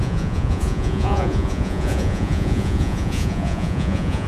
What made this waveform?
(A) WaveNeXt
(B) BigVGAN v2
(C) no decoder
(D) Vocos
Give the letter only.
D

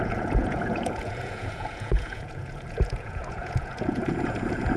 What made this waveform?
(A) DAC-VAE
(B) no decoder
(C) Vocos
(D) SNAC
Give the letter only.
C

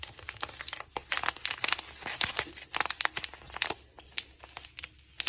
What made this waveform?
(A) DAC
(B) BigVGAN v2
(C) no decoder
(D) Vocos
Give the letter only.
C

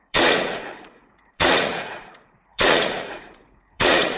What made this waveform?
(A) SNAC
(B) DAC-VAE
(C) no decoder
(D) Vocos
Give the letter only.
D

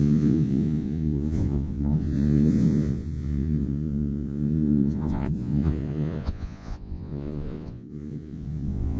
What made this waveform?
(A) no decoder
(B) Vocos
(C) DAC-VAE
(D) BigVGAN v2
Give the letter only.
B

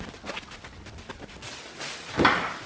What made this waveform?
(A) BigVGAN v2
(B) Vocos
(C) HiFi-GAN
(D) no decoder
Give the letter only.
D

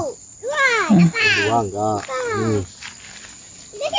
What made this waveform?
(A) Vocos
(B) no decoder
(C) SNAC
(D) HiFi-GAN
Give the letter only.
B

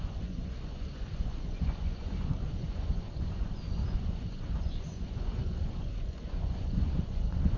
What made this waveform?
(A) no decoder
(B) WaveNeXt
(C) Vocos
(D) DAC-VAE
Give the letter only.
C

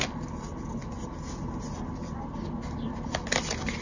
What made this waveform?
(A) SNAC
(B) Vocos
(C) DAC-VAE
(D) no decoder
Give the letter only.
D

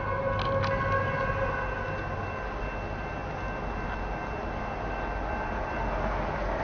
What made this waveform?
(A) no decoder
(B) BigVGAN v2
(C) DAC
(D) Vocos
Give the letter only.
A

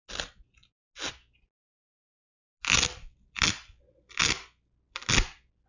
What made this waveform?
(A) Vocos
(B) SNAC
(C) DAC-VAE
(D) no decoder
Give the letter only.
D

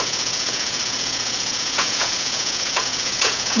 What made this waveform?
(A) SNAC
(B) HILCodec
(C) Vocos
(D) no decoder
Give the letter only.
C